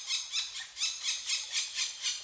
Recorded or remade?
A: recorded